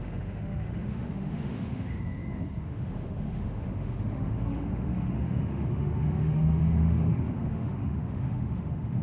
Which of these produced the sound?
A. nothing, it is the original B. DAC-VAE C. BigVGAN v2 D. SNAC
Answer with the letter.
B